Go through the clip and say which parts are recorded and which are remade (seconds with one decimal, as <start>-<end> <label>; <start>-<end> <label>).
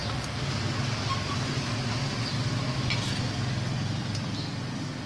0.0-5.1 recorded